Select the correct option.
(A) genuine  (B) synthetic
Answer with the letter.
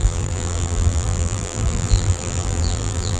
B